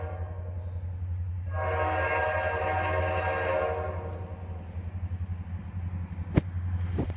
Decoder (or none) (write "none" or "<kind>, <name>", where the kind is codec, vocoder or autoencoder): none